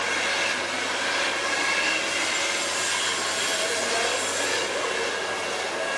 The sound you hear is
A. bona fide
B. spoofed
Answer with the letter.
A